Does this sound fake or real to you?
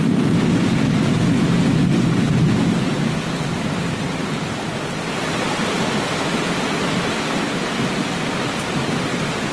real